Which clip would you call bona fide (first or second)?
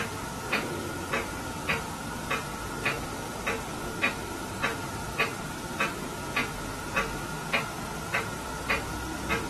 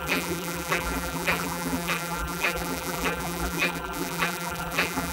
first